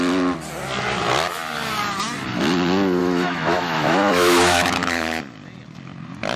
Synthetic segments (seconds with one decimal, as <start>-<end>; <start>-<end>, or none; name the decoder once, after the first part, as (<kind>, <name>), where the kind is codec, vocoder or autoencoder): 3.0-5.2 (autoencoder, DAC-VAE)